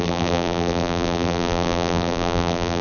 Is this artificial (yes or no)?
yes